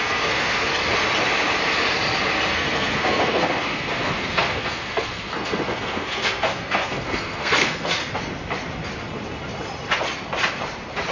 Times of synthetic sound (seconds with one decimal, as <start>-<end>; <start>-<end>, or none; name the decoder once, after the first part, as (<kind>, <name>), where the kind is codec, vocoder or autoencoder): 0.0-0.7 (codec, SNAC); 2.5-8.0